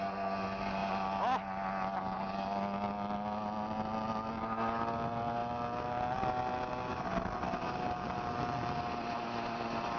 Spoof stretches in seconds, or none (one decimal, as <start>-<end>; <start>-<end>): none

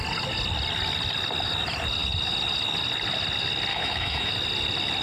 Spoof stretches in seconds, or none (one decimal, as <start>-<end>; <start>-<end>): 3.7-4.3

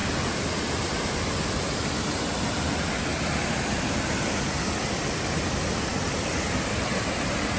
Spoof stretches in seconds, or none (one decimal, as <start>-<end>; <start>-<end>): none